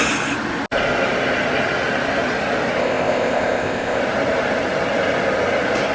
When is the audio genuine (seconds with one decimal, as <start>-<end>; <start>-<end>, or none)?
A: 0.0-2.8; 4.0-5.9